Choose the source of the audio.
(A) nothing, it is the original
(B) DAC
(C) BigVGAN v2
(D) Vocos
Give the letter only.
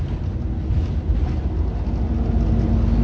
A